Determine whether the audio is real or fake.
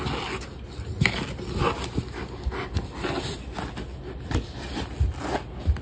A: real